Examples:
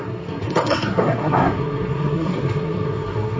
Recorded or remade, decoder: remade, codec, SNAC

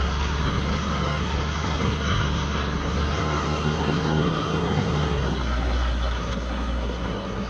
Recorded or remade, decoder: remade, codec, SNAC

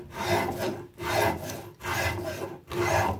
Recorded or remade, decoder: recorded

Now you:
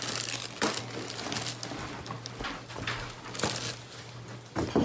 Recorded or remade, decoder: recorded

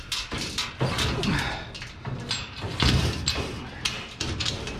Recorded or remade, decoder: recorded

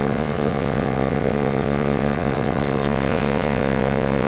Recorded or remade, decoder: remade, vocoder, WaveNeXt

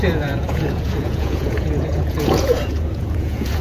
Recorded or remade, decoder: remade, vocoder, Vocos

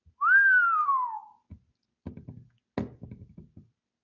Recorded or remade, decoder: recorded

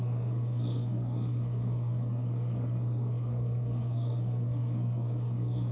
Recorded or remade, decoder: remade, codec, SNAC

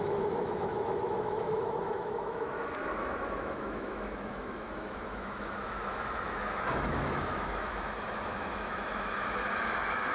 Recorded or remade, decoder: remade, autoencoder, DAC-VAE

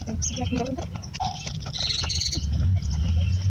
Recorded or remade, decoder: recorded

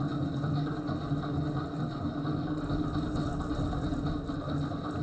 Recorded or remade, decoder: recorded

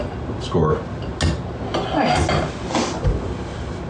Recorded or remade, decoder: recorded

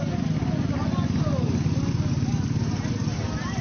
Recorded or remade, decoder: recorded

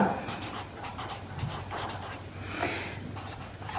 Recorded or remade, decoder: remade, vocoder, BigVGAN v2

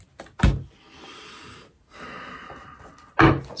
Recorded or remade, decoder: recorded